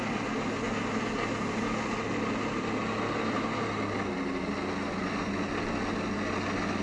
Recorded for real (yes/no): yes